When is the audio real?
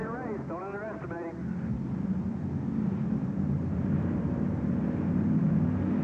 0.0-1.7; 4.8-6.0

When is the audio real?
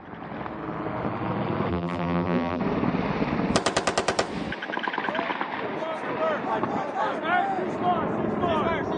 0.0-1.7; 2.6-9.0